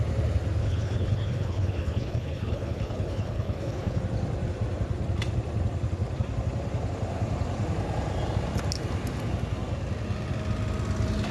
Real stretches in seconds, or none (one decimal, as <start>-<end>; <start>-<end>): 0.0-0.6; 4.0-11.3